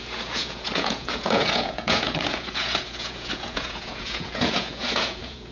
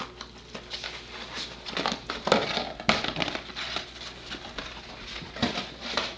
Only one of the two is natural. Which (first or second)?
second